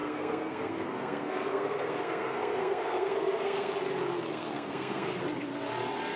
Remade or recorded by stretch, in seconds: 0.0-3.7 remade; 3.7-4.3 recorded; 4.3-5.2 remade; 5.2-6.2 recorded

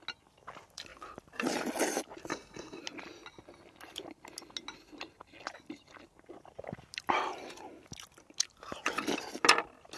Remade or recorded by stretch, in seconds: 0.0-2.3 recorded; 2.3-2.8 remade; 2.8-10.0 recorded

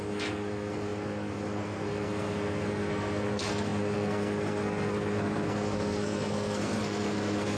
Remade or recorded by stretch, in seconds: 0.0-7.6 remade

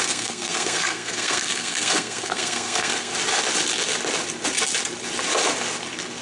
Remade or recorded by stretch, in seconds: 0.0-3.1 remade; 3.1-6.2 recorded

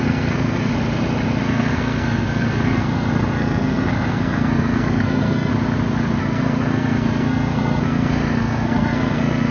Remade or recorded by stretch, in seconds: 0.0-0.7 remade; 0.7-1.4 recorded; 1.4-5.5 remade; 5.5-6.2 recorded; 6.2-9.5 remade

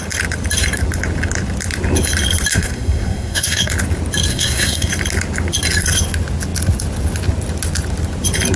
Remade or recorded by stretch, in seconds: 0.0-2.5 recorded; 2.5-3.7 remade; 3.7-4.3 recorded; 4.3-4.9 remade; 4.9-8.6 recorded

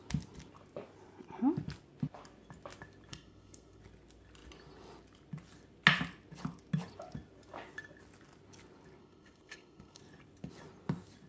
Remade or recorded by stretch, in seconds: 0.0-3.1 recorded; 3.1-3.8 remade; 3.8-9.0 recorded; 9.0-10.0 remade; 10.0-11.3 recorded